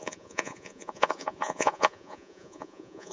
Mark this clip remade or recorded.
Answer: remade